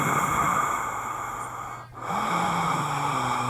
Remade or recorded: recorded